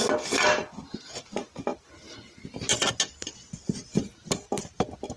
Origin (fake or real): real